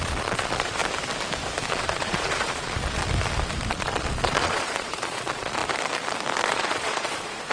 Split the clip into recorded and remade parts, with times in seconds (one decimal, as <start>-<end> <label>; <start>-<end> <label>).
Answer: 0.0-0.8 remade; 0.8-1.7 recorded; 1.7-3.0 remade; 3.0-3.7 recorded; 3.7-5.6 remade; 5.6-6.5 recorded; 6.5-7.5 remade